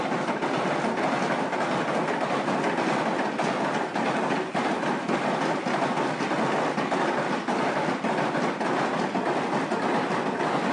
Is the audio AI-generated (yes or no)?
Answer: no